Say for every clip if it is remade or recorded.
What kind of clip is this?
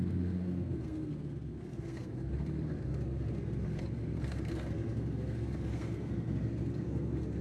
remade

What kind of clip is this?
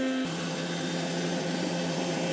recorded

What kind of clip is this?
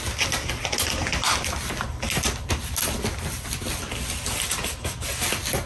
recorded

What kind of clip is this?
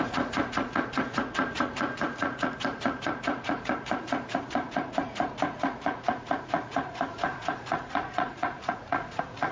remade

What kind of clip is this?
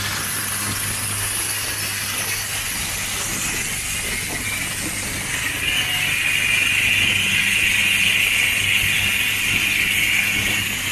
recorded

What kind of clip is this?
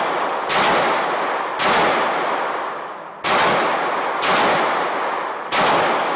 recorded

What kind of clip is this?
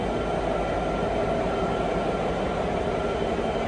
recorded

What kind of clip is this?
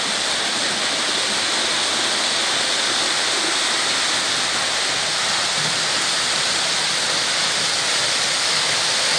recorded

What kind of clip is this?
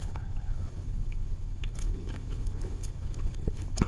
remade